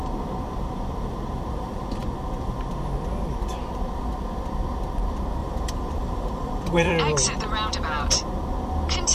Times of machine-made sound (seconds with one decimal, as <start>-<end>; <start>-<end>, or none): 5.4-6.9

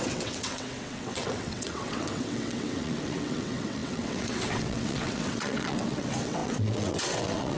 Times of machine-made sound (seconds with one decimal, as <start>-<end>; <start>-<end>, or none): 0.0-7.6